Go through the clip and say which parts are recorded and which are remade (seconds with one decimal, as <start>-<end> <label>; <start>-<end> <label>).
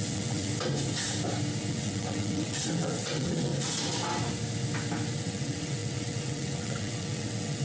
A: 0.0-0.5 remade; 0.5-1.7 recorded; 1.7-3.5 remade; 3.5-5.2 recorded; 5.2-7.6 remade